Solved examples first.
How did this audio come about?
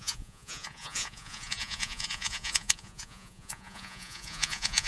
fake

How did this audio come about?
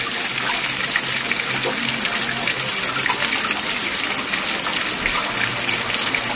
real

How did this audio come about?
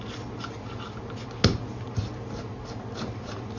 real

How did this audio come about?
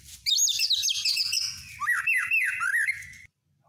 real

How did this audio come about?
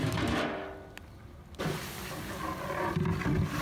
real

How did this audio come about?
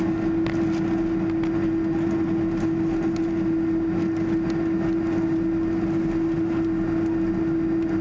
real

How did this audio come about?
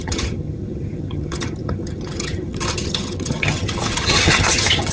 fake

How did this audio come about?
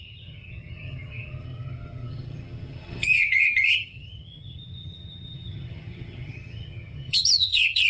fake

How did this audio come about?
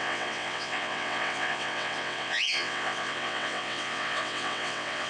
fake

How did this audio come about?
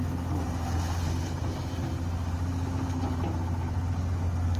real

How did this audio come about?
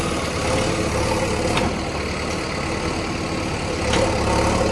real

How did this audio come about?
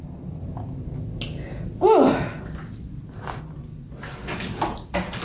real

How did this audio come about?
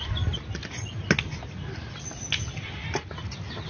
real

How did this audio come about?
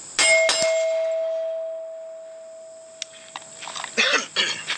real